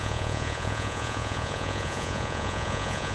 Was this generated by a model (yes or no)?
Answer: yes